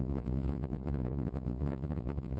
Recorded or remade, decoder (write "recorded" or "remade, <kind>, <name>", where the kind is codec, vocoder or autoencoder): remade, vocoder, Vocos